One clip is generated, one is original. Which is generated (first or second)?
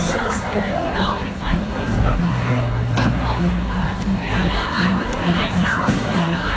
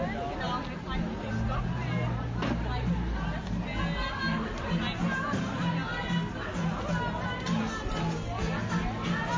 first